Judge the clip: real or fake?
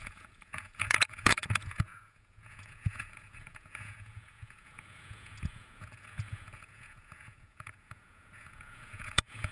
fake